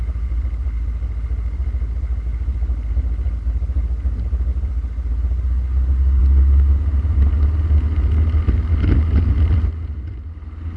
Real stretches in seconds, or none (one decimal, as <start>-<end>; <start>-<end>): 0.0-10.8